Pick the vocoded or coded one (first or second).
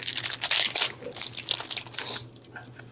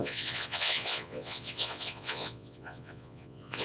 second